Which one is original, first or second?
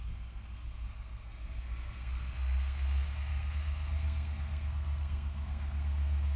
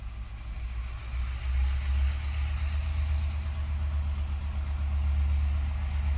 second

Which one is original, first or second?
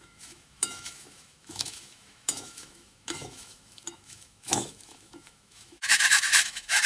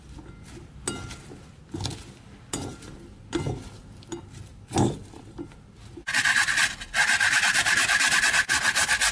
second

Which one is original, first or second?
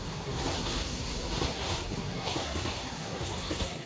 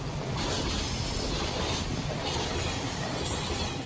second